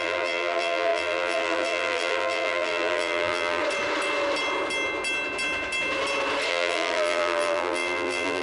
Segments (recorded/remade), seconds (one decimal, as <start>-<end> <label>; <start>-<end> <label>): 0.0-3.6 remade; 3.6-6.5 recorded; 6.5-8.4 remade